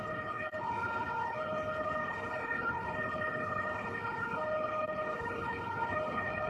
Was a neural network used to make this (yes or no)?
yes